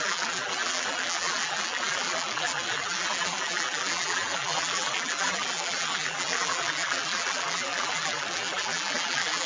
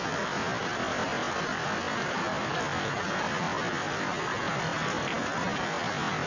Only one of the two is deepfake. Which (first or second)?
first